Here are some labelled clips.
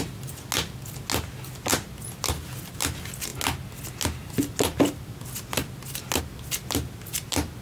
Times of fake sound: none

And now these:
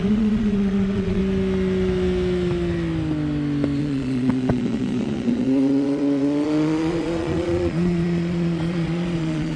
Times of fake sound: 0.0-1.2 (vocoder, Vocos); 3.8-9.6

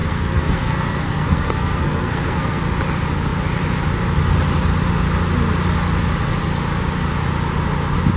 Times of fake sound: 0.0-2.6 (codec, SNAC)